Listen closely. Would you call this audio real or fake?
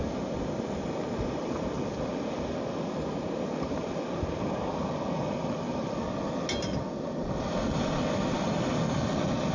real